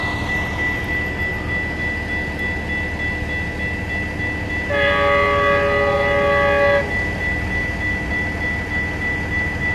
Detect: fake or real real